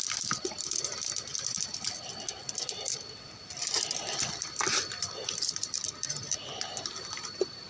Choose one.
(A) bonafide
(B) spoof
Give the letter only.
B